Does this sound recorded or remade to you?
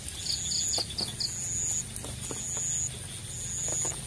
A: recorded